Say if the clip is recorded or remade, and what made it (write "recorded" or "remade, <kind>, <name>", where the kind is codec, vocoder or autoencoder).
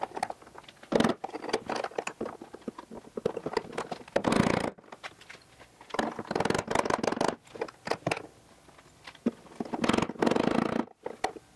recorded